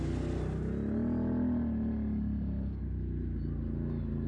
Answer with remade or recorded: recorded